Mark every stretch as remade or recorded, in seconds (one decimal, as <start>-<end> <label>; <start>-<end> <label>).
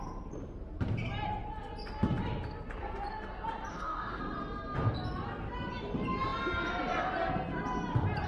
0.0-3.7 recorded; 3.7-4.2 remade; 4.2-8.3 recorded